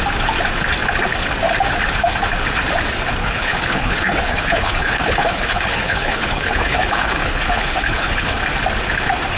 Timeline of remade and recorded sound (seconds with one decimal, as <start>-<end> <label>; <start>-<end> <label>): 0.0-3.2 recorded; 3.2-8.4 remade; 8.4-9.4 recorded